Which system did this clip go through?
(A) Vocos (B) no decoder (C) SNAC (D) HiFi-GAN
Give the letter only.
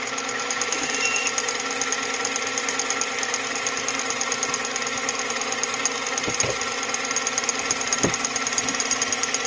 B